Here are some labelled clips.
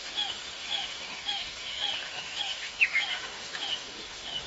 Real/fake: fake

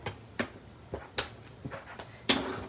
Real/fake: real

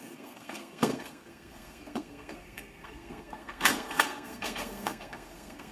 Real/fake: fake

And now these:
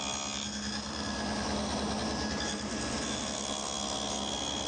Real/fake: real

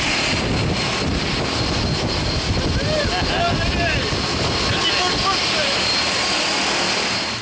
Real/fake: real